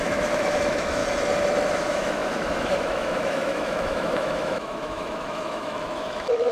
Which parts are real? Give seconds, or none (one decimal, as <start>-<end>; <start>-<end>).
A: 1.0-1.7